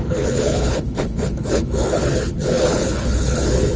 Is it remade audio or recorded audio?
remade